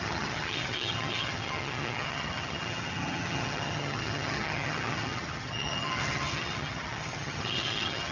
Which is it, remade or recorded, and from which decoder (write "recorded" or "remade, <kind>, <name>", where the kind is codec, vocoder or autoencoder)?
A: remade, vocoder, HiFi-GAN